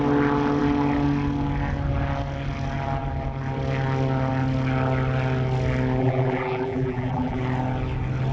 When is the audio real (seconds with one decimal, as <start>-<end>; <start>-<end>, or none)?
0.0-6.0; 7.4-8.3